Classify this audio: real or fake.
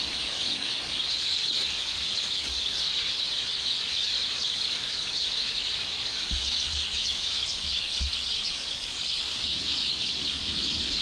fake